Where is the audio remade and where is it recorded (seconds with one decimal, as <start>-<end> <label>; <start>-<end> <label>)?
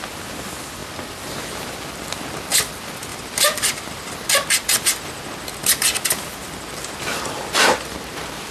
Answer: 0.0-0.8 recorded; 0.8-1.7 remade; 1.7-3.1 recorded; 3.1-4.1 remade; 4.1-5.6 recorded; 5.6-6.3 remade; 6.3-8.5 recorded